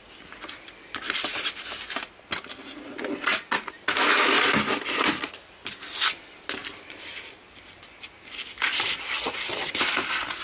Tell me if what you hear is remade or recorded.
recorded